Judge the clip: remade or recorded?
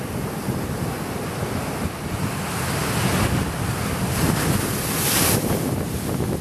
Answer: recorded